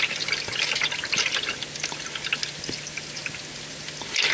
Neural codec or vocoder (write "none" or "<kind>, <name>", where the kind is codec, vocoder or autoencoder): none